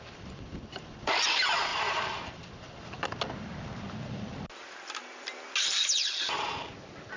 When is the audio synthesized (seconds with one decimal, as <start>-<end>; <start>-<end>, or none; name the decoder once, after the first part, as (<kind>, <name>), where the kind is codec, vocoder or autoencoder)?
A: none